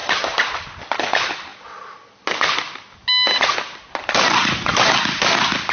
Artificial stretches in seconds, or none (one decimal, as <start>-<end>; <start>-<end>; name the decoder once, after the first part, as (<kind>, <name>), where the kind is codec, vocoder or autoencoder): none

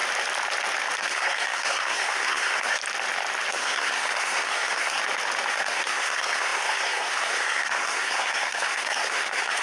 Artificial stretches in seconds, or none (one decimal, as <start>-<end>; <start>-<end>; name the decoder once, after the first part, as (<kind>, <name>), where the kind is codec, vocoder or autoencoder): 1.0-2.8 (codec, SNAC); 3.5-5.0; 5.5-9.6

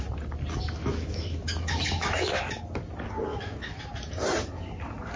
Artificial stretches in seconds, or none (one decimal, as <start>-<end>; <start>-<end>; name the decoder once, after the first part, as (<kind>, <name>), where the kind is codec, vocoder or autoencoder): 0.8-2.4 (autoencoder, DAC-VAE); 3.3-3.8

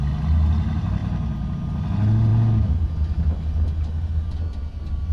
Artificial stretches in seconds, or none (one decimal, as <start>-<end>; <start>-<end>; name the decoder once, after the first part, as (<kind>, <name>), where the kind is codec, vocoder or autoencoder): none

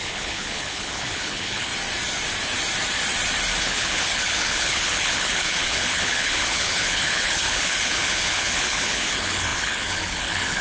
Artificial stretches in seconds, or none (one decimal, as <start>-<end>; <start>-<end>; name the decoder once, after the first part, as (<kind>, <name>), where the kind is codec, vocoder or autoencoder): 0.0-1.7 (codec, HILCodec); 3.6-10.6